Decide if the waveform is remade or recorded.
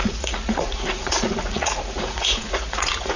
remade